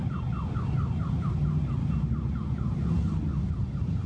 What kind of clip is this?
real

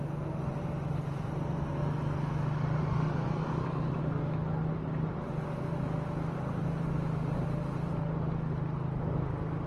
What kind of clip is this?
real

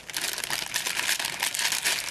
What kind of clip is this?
real